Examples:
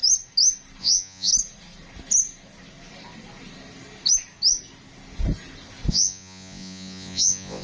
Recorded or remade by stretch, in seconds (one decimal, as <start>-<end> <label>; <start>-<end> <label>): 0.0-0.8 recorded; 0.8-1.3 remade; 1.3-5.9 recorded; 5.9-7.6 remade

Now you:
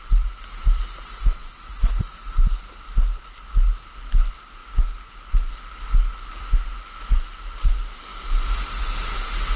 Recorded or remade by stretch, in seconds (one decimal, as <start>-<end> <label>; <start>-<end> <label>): 0.0-9.6 recorded

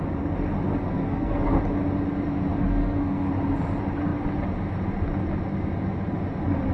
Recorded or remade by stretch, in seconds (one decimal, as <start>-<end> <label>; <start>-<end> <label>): 0.0-0.7 recorded; 0.7-1.6 remade; 1.6-2.6 recorded; 2.6-3.3 remade; 3.3-6.7 recorded

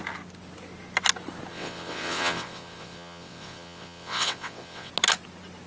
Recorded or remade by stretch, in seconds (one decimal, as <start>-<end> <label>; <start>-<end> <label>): 0.0-1.5 recorded; 1.5-4.9 remade; 4.9-5.7 recorded

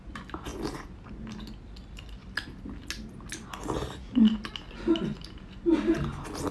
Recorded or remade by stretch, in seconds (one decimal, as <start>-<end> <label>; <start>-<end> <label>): 0.0-6.5 recorded

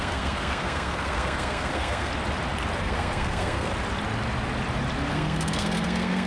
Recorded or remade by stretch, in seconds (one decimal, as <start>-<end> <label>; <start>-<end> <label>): 0.0-2.1 remade; 2.1-2.8 recorded; 2.8-3.7 remade; 3.7-5.1 recorded; 5.1-6.3 remade